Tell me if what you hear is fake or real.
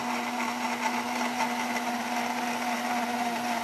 real